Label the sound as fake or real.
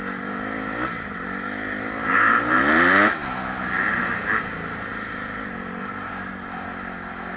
real